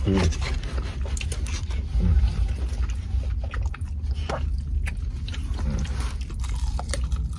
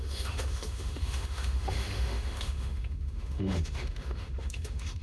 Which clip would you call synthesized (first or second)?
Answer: second